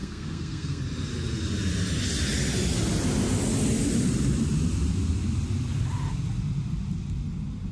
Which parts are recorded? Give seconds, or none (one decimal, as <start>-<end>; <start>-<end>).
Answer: 0.8-7.7